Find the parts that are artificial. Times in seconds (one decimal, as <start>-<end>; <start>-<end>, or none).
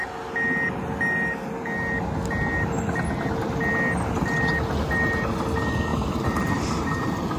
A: 5.9-6.7